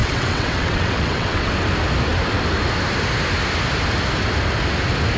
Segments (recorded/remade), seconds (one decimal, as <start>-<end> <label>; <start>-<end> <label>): 0.0-1.5 remade; 1.5-5.2 recorded